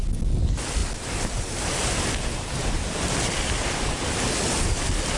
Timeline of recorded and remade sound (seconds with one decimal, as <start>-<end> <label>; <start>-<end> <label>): 0.0-5.2 recorded